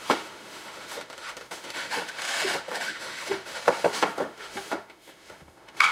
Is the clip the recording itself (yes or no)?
no